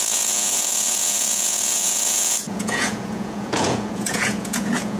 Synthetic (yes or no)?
yes